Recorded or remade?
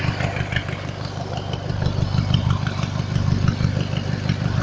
recorded